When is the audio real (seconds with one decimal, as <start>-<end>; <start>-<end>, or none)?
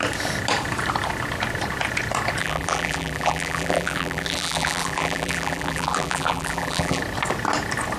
0.0-2.4; 7.0-8.0